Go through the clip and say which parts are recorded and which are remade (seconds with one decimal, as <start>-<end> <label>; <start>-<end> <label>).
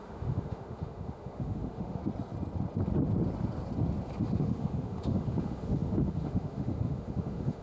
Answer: 0.0-2.0 remade; 2.0-4.2 recorded; 4.2-7.6 remade